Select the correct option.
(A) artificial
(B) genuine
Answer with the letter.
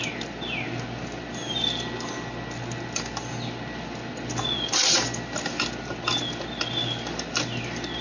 B